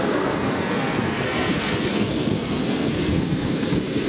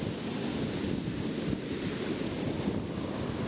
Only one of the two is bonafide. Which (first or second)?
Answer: second